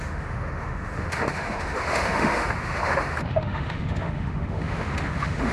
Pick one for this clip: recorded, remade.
remade